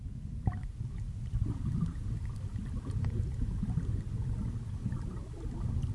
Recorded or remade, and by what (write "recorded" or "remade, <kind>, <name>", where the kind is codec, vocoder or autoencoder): recorded